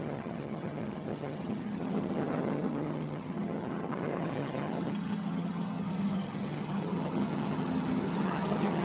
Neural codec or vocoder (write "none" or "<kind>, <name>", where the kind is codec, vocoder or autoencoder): vocoder, HiFi-GAN